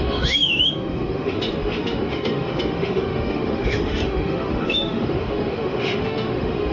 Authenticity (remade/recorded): remade